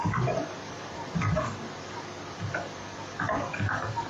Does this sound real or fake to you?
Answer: fake